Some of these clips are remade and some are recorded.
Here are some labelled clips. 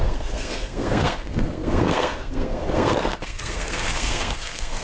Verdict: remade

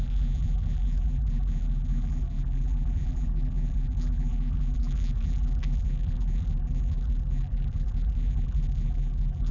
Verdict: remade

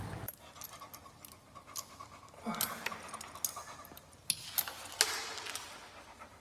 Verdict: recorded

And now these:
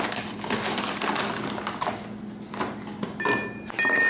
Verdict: recorded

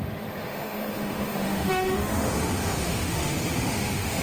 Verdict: remade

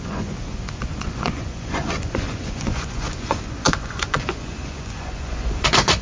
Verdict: remade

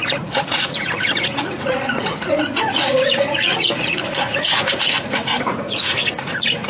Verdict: remade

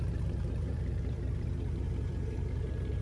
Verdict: remade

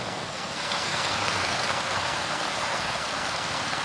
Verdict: remade